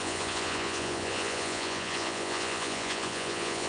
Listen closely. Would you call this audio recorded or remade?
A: remade